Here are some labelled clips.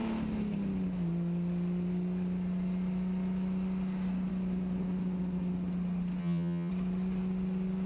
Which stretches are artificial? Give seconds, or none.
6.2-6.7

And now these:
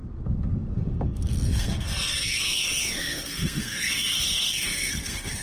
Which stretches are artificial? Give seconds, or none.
0.0-5.4

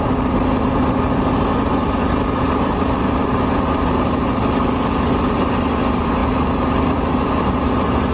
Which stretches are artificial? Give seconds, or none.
1.5-2.6; 6.2-7.5

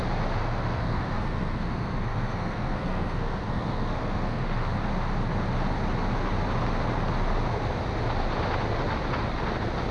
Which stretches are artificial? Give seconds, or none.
0.4-4.4